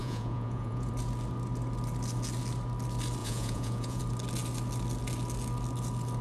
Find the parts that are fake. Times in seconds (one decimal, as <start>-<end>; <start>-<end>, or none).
0.0-0.9; 3.2-4.0